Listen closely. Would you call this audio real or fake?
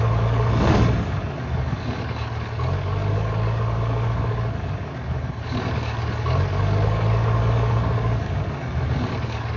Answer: fake